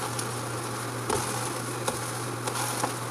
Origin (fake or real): real